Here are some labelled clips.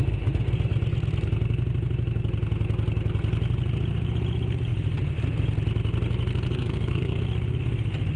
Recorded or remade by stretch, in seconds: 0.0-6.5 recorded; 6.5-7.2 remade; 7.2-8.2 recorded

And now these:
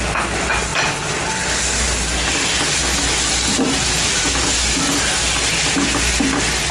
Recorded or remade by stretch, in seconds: 0.0-6.7 recorded

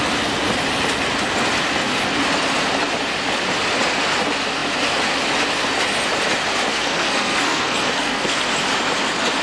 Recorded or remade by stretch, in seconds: 0.0-6.7 recorded; 6.7-8.5 remade; 8.5-9.4 recorded